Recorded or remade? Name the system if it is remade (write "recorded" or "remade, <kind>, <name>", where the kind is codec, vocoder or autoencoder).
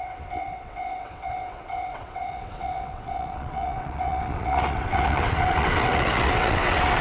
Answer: remade, vocoder, WaveNeXt